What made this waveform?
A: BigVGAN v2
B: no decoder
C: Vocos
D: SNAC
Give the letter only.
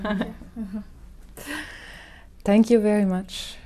B